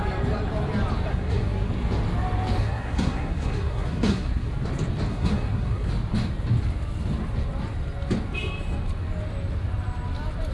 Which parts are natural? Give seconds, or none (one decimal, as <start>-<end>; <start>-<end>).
0.0-1.1; 1.7-2.6; 4.5-5.1; 5.9-10.5